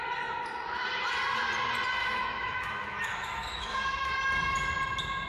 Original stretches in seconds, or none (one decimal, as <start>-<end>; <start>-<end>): 0.0-2.0; 4.1-5.3